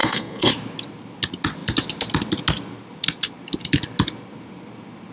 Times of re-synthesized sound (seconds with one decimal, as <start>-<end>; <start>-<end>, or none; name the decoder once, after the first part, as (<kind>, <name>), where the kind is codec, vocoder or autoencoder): 0.0-0.5 (codec, SNAC)